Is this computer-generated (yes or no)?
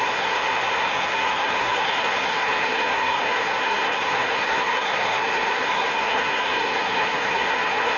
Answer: yes